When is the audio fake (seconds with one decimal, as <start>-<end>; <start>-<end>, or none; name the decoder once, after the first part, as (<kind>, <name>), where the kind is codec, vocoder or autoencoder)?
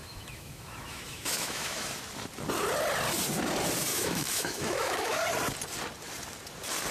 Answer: 0.0-1.9 (autoencoder, DAC-VAE); 3.9-5.2